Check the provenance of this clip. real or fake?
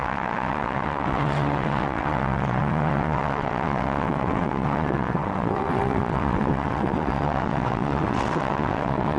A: fake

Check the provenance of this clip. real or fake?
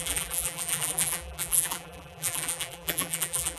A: fake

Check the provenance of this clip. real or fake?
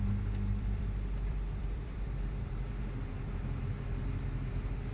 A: fake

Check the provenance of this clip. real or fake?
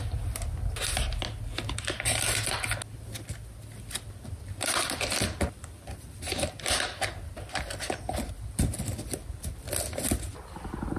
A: real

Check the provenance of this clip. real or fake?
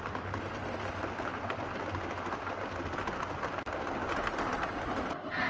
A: real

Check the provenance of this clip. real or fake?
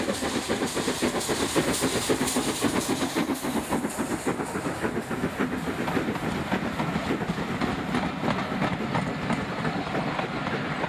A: real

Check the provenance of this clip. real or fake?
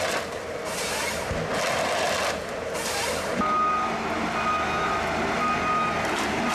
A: real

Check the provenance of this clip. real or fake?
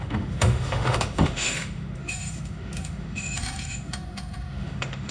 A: fake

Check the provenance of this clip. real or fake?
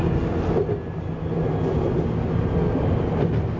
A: real